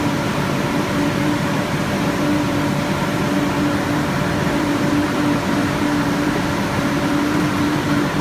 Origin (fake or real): fake